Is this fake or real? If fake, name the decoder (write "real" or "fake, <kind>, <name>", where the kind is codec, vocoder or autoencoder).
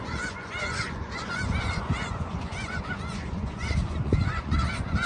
fake, vocoder, Vocos